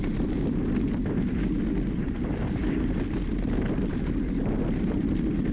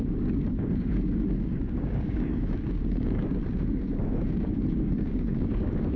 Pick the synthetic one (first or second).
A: second